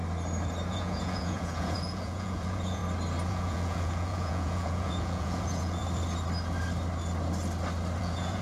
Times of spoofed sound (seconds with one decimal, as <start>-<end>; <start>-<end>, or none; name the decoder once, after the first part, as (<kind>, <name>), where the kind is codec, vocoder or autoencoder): 0.7-2.8 (vocoder, Vocos); 3.3-5.8; 8.0-8.4